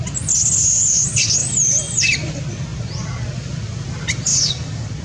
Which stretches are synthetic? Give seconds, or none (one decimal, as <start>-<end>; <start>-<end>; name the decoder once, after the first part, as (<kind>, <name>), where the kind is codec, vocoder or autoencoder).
1.4-2.3 (vocoder, BigVGAN v2); 4.3-5.0